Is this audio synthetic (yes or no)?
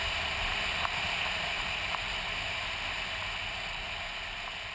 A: no